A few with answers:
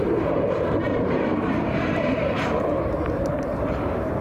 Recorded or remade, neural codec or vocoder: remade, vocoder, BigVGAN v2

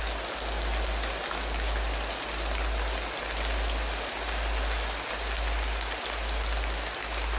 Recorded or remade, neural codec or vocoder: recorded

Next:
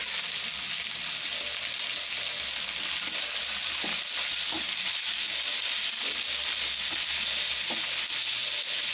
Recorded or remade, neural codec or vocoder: recorded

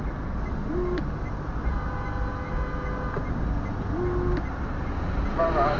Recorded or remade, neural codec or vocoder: recorded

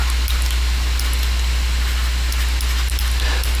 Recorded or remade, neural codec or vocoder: recorded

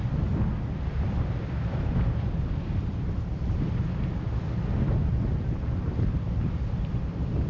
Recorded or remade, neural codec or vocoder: recorded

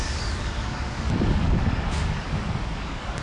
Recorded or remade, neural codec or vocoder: remade, codec, DAC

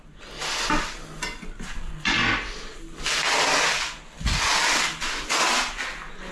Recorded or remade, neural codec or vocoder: recorded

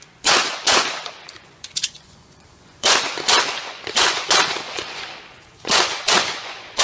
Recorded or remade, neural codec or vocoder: remade, vocoder, Vocos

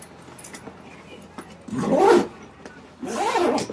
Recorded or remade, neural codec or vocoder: recorded